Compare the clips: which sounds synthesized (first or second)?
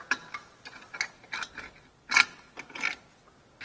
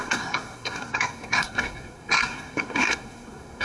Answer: second